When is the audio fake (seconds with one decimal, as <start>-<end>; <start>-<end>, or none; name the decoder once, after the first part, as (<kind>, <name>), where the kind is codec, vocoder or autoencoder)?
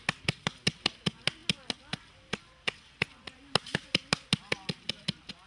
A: none